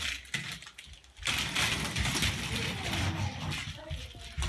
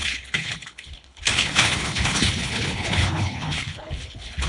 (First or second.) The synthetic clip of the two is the second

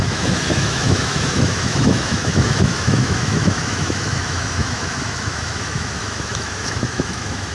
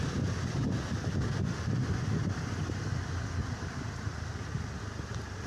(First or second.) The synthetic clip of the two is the first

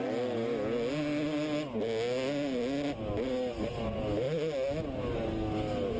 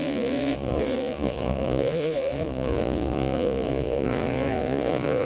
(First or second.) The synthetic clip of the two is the second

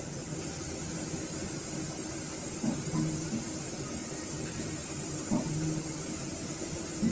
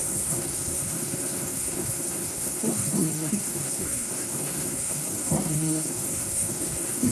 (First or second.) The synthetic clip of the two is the second